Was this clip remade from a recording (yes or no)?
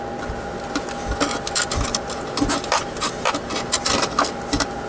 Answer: no